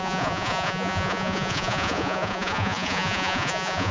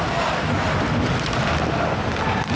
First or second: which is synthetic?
first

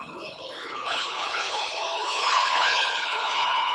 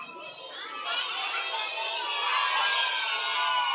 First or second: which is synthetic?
first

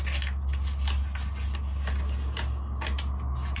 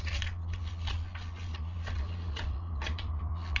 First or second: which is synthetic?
second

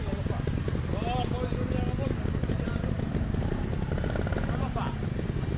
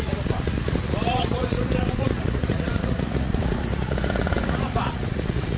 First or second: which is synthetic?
second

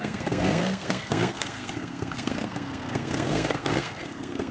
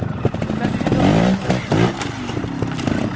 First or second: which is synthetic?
first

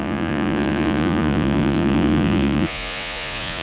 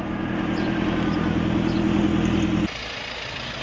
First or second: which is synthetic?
first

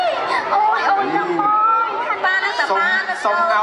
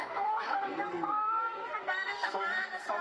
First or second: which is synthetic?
second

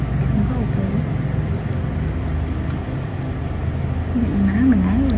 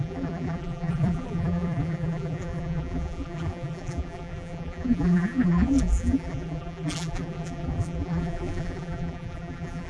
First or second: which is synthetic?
second